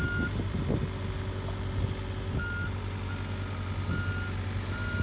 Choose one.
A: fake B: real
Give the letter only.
B